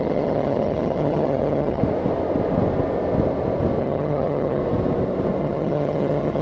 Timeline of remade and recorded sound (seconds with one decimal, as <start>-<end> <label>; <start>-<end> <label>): 0.0-1.8 remade; 1.8-3.8 recorded; 3.8-4.6 remade; 4.6-5.4 recorded; 5.4-6.4 remade

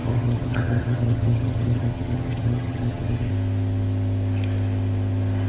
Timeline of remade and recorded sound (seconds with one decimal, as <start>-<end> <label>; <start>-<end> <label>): 0.0-3.3 remade; 3.3-5.5 recorded

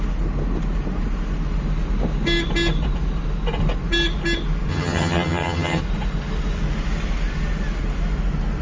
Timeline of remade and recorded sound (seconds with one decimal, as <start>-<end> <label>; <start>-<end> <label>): 0.0-4.7 recorded; 4.7-5.8 remade; 5.8-8.6 recorded

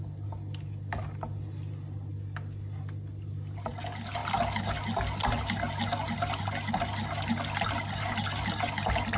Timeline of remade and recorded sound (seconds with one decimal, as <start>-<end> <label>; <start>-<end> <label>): 0.0-9.2 recorded